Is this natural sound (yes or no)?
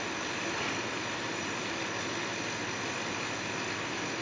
yes